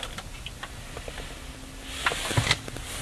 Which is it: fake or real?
real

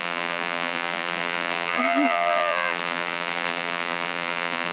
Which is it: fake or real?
fake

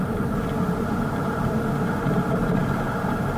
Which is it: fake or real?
fake